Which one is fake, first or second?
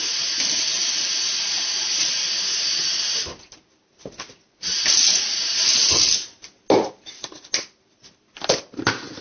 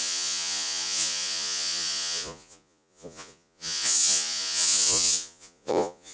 second